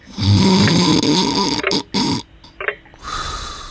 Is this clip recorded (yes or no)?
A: yes